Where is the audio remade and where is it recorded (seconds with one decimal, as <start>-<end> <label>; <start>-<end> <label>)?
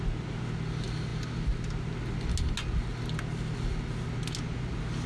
0.0-5.1 recorded